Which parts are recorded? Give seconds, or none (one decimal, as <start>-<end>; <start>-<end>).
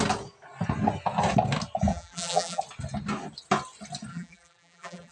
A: 0.0-1.9; 2.6-4.1